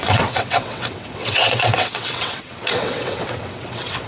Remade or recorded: remade